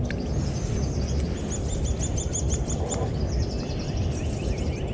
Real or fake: real